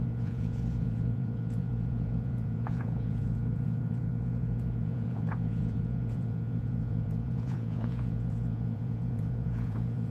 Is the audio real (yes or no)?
no